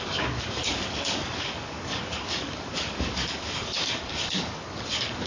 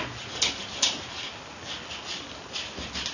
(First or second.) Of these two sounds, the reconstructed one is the first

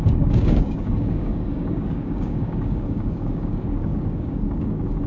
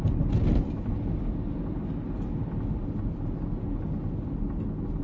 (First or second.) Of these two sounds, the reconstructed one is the first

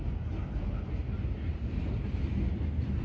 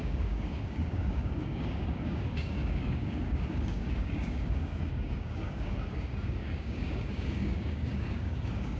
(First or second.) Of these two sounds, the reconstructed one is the second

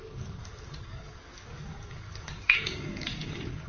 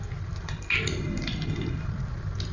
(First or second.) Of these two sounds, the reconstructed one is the first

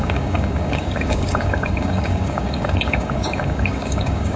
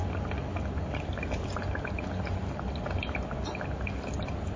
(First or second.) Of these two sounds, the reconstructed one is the first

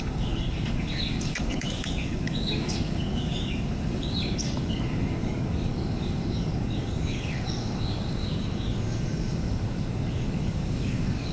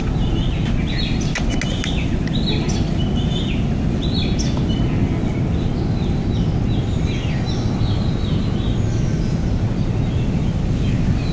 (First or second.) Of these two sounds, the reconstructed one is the first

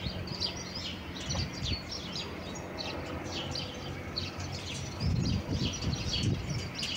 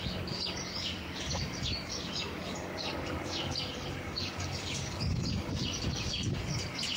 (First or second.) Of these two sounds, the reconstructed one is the second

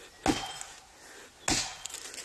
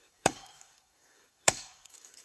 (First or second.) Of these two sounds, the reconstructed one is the second